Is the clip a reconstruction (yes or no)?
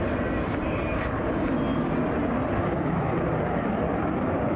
no